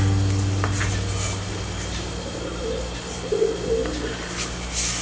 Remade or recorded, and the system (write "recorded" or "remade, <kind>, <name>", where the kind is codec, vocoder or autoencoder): recorded